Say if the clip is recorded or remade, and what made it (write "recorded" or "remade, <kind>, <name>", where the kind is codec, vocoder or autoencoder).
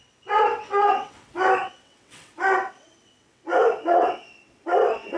remade, vocoder, WaveNeXt